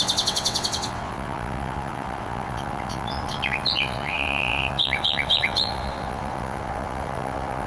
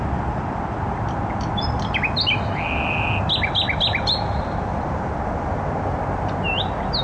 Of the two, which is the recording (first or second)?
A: second